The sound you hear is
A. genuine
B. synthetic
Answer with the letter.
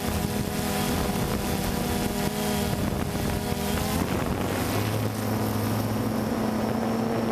A